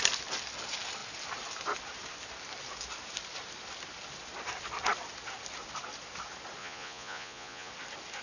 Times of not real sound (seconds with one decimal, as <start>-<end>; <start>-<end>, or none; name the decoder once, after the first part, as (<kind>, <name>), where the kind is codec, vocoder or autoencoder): 6.6-7.7 (vocoder, Vocos)